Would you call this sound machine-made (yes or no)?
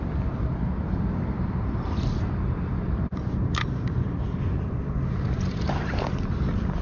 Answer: yes